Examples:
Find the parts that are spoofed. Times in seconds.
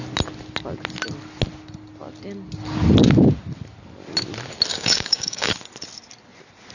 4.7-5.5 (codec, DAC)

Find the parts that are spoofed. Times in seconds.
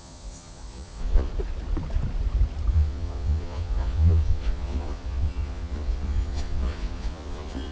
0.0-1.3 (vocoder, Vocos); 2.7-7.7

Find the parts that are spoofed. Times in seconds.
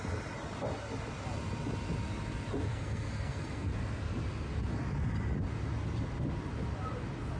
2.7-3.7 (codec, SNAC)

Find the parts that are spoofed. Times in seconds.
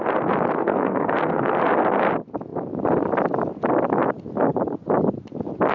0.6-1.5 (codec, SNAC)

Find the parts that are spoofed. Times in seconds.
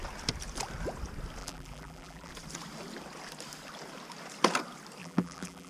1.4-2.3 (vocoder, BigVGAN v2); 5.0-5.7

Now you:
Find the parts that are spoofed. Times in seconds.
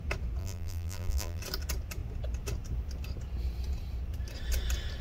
0.4-1.4 (vocoder, BigVGAN v2)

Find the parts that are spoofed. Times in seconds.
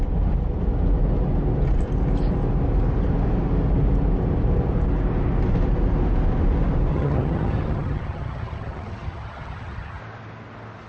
6.9-10.0 (vocoder, HiFi-GAN)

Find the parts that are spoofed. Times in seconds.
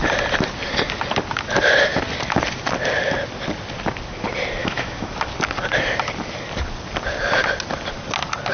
4.6-5.1 (autoencoder, DAC-VAE)